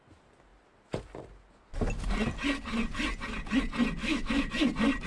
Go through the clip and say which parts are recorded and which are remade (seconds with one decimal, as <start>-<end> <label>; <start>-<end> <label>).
0.0-4.0 recorded; 4.0-4.5 remade; 4.5-5.1 recorded

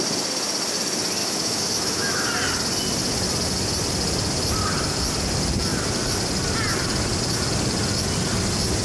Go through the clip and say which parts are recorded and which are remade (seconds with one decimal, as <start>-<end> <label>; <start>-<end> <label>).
0.0-1.2 recorded; 1.2-2.2 remade; 2.2-8.8 recorded

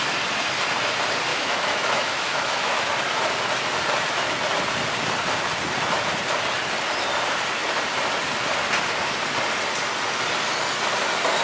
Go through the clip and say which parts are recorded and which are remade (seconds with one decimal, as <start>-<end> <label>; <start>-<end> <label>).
0.0-1.3 recorded; 1.3-2.9 remade; 2.9-11.4 recorded

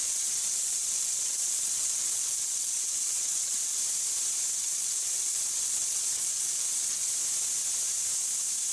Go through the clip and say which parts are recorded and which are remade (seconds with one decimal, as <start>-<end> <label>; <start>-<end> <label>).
0.0-3.8 remade; 3.8-4.6 recorded; 4.6-7.1 remade; 7.1-8.7 recorded

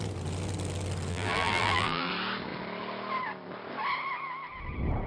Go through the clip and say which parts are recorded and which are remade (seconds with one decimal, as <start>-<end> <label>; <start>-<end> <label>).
0.0-1.1 recorded; 1.1-2.1 remade; 2.1-5.1 recorded

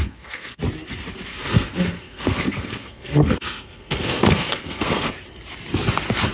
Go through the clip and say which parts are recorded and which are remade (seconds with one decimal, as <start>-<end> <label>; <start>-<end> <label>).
0.0-0.6 remade; 0.6-1.3 recorded; 1.3-5.1 remade; 5.1-6.3 recorded

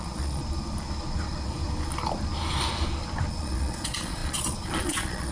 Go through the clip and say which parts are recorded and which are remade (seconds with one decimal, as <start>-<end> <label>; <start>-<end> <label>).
0.0-0.4 remade; 0.4-3.3 recorded; 3.3-5.3 remade